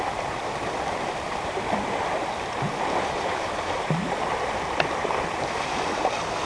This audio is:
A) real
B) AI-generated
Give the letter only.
B